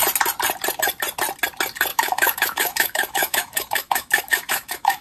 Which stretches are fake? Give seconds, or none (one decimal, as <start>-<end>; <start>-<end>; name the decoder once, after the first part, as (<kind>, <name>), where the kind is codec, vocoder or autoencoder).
1.9-5.0 (autoencoder, DAC-VAE)